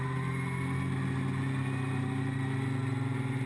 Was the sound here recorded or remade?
recorded